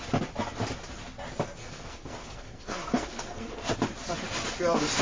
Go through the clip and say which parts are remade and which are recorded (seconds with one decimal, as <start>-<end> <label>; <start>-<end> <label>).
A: 0.0-1.6 recorded; 1.6-3.7 remade; 3.7-5.0 recorded